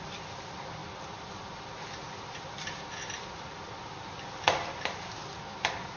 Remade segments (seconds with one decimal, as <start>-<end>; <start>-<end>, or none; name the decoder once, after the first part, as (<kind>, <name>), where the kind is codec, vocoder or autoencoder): none